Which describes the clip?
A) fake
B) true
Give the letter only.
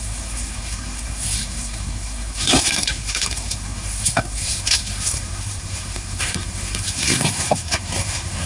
A